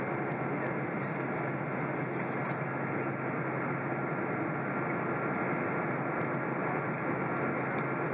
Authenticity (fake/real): real